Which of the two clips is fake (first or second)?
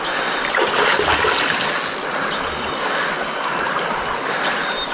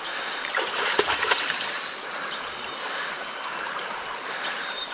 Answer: second